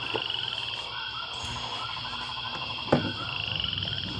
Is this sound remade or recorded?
recorded